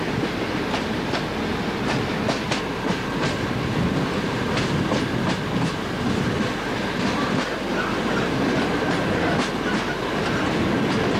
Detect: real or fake real